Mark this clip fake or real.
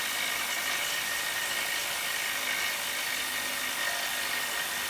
real